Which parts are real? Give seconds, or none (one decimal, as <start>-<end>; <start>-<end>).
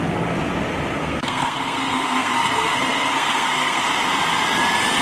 0.0-1.0; 3.8-5.0